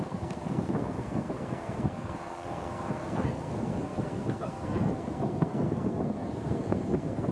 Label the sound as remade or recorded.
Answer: remade